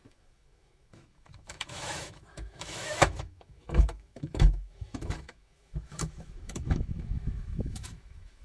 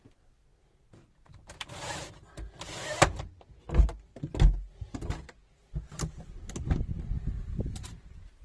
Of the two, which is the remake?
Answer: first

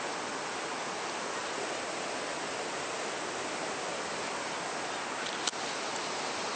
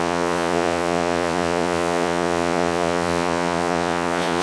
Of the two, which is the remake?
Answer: second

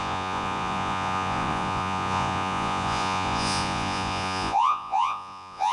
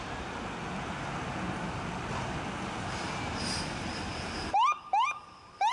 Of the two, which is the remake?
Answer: first